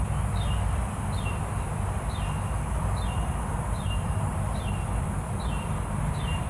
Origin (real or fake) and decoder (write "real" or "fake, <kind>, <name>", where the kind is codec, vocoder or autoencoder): real